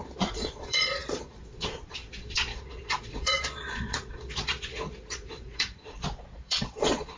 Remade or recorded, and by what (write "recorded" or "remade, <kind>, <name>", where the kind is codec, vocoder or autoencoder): remade, vocoder, Vocos